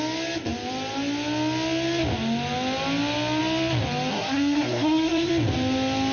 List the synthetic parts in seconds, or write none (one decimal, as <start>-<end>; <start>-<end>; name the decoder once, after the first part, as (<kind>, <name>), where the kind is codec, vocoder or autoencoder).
4.1-5.3 (codec, SNAC)